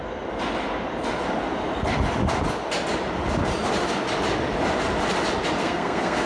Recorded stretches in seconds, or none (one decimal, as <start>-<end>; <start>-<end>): 0.0-5.6